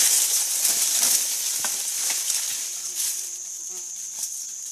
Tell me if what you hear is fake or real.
fake